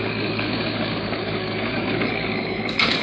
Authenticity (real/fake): fake